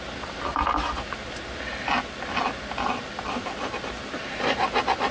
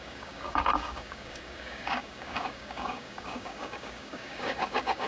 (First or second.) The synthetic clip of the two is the second